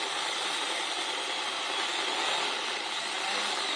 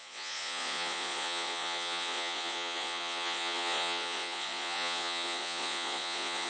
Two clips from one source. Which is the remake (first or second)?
second